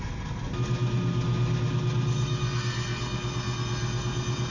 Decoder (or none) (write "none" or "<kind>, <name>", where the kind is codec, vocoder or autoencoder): none